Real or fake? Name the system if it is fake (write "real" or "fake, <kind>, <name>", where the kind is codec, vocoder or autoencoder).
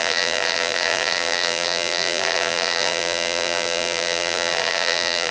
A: fake, vocoder, BigVGAN v2